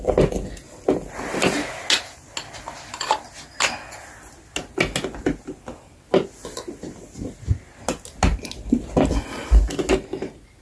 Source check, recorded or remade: recorded